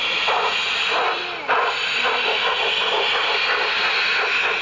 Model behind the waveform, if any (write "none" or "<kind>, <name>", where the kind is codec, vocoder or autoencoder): none